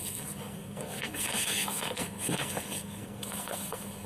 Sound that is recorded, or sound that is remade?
remade